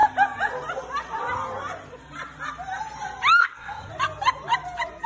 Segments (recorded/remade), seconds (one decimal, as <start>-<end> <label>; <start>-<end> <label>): 0.0-3.4 recorded; 3.4-3.9 remade; 3.9-5.1 recorded

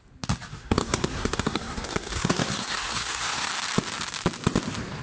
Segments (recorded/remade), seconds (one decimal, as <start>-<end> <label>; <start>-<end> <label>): 0.0-0.5 recorded; 0.5-3.5 remade; 3.5-5.0 recorded